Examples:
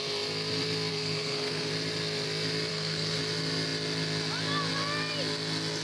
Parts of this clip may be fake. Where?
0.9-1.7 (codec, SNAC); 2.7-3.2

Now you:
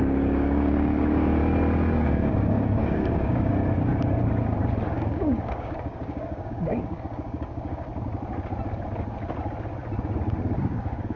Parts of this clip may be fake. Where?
0.0-1.4 (codec, DAC); 1.9-3.5; 4.9-7.9; 10.6-11.2

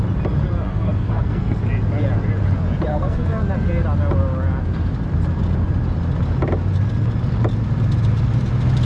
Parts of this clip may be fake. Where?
0.7-1.6 (codec, SNAC); 2.9-3.4

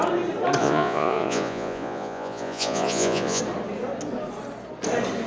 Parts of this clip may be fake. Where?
0.6-3.4 (vocoder, Vocos)

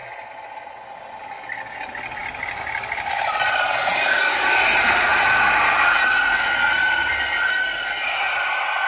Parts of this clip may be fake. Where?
none

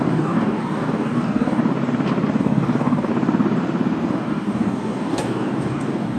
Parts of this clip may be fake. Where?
0.0-1.6 (codec, DAC); 2.4-3.1; 4.1-6.2

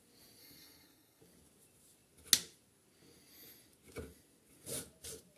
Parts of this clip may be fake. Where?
0.4-1.2 (codec, SNAC)

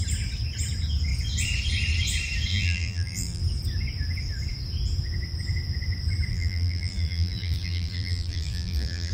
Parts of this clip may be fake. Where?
2.5-3.4 (vocoder, BigVGAN v2); 6.3-9.1